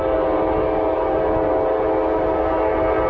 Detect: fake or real real